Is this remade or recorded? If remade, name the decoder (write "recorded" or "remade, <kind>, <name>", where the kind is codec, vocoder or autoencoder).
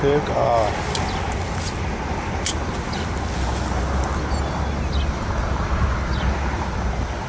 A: recorded